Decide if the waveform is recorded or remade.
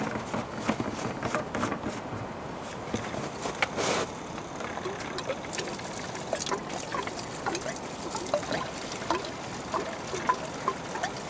recorded